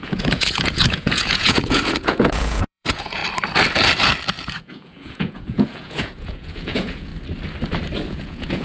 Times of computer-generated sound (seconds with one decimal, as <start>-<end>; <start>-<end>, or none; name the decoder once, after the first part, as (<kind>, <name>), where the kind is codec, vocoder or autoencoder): 0.0-3.2 (vocoder, Vocos); 4.6-7.1; 8.1-8.6